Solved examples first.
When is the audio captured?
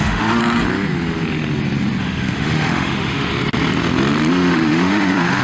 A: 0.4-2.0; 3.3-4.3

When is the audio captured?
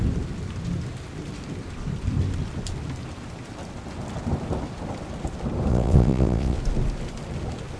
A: 0.0-5.7; 6.6-7.8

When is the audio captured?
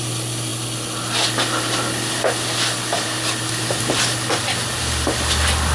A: 0.0-5.7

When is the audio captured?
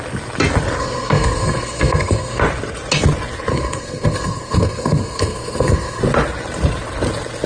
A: 0.0-0.8; 2.4-3.5; 6.0-7.5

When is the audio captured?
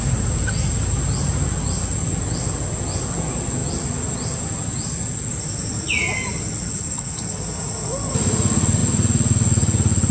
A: 0.0-6.7; 7.4-10.1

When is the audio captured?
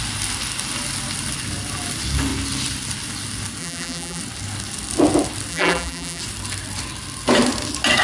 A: 0.0-3.6; 4.2-5.5; 6.2-8.0